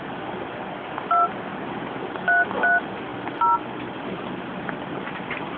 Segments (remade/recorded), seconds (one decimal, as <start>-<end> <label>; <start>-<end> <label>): 0.0-5.6 recorded